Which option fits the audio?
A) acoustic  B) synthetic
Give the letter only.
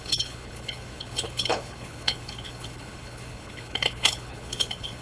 B